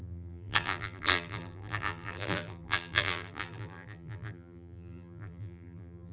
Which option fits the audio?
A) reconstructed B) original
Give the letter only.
A